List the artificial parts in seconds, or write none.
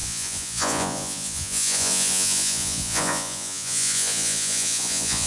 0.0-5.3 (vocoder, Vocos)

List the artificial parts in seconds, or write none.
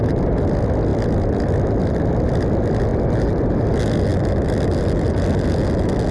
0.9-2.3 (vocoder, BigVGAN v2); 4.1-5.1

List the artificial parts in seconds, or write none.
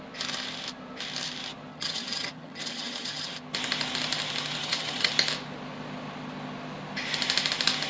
1.7-3.3 (vocoder, HiFi-GAN); 4.6-5.1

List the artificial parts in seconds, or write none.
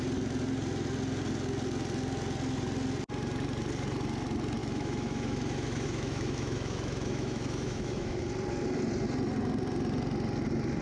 4.6-8.2 (autoencoder, DAC-VAE)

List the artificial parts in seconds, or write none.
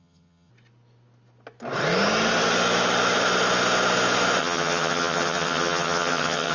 0.0-0.5 (vocoder, HiFi-GAN); 4.4-6.5